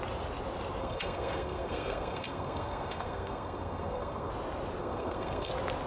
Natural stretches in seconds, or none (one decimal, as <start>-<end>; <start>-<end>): 0.0-0.8; 4.3-4.8; 5.5-5.9